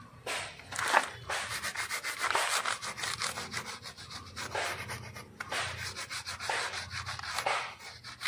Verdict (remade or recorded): recorded